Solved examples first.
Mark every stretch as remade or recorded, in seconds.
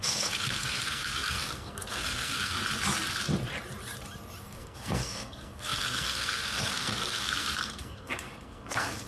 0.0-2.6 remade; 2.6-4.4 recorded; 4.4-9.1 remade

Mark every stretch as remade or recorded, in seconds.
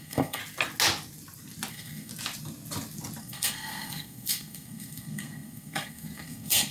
0.0-0.4 remade; 0.4-1.7 recorded; 1.7-2.1 remade; 2.1-3.2 recorded; 3.2-6.7 remade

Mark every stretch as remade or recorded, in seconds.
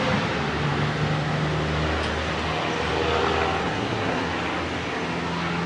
0.0-3.6 recorded; 3.6-4.3 remade; 4.3-5.7 recorded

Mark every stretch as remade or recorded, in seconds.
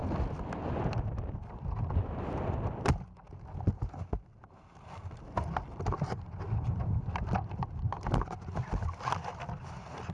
0.0-10.1 recorded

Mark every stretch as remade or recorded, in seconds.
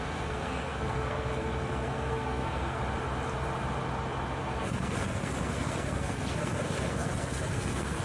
0.0-2.8 remade; 2.8-4.4 recorded; 4.4-8.0 remade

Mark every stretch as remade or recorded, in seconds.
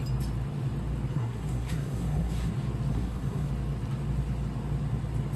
0.0-1.1 recorded; 1.1-2.5 remade; 2.5-2.9 recorded; 2.9-3.5 remade; 3.5-5.4 recorded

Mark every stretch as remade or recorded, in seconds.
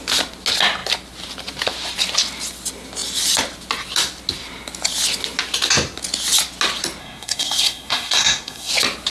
0.0-7.0 recorded; 7.0-8.7 remade; 8.7-9.1 recorded